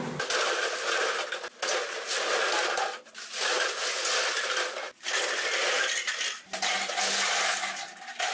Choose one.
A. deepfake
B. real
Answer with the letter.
B